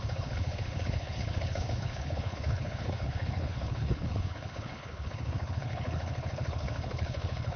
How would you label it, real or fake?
fake